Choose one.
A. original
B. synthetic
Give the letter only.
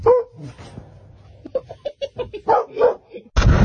A